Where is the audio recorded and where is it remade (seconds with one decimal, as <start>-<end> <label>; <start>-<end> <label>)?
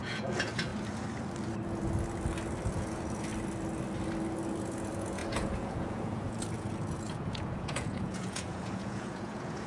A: 0.0-0.7 remade; 0.7-2.7 recorded; 2.7-3.3 remade; 3.3-4.6 recorded; 4.6-9.7 remade